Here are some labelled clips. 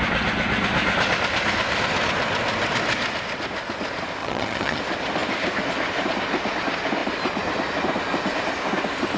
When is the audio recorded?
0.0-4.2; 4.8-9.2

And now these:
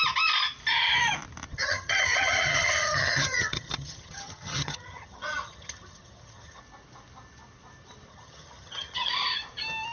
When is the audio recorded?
0.0-1.5; 6.6-8.1; 9.1-9.9

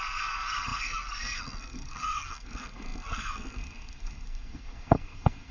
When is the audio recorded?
none

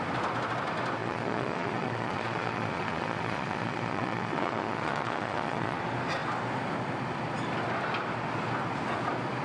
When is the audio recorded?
0.0-1.0; 5.8-9.4